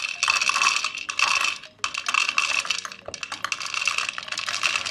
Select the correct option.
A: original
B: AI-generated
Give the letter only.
A